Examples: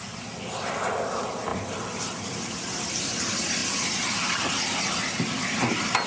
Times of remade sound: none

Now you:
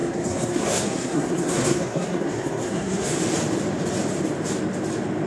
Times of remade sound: 0.0-3.2 (codec, SNAC)

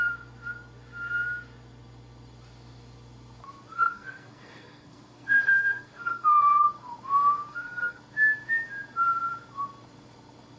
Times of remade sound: 3.7-6.5 (codec, SNAC); 7.5-8.0

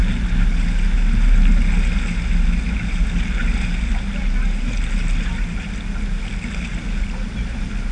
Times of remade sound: none

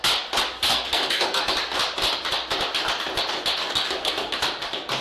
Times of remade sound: 0.7-1.5 (codec, SNAC); 3.6-4.3

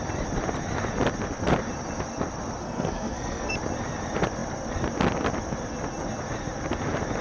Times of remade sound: 2.6-3.5 (codec, SNAC)

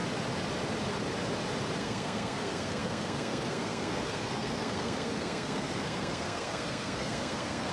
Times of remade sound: 1.8-7.7 (codec, SNAC)

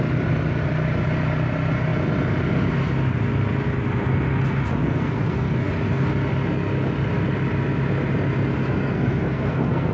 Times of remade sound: 4.8-5.7 (codec, SNAC); 8.8-9.9